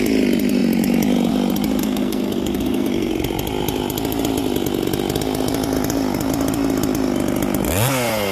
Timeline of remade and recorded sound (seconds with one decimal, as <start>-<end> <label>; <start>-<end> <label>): 0.0-1.8 recorded; 1.8-3.1 remade; 3.1-8.3 recorded

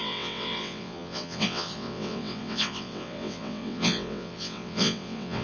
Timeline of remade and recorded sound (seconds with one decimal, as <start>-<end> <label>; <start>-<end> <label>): 0.0-5.4 remade